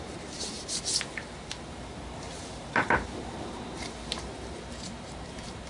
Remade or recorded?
remade